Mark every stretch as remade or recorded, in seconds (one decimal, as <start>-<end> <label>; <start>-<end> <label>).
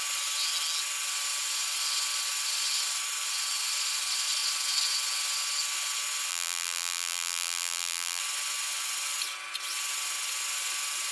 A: 0.0-6.3 recorded; 6.3-8.2 remade; 8.2-11.1 recorded